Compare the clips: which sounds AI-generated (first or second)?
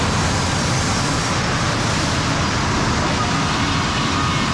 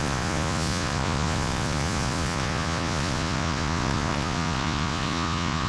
second